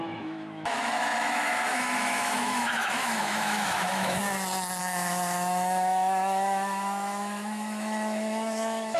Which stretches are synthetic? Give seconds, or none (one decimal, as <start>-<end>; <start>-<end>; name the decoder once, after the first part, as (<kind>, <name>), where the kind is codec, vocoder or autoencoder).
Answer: 0.0-4.2 (autoencoder, DAC-VAE); 4.8-9.0